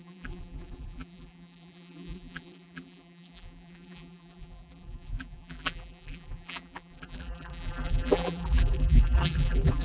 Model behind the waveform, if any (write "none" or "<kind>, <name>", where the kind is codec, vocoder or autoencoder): vocoder, BigVGAN v2